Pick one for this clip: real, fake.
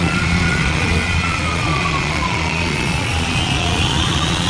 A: fake